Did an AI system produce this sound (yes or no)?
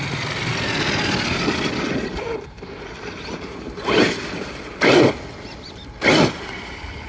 no